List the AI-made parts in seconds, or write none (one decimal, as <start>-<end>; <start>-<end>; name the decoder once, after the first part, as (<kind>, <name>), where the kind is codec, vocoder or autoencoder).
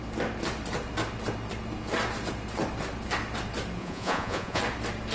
3.8-4.6 (vocoder, Vocos)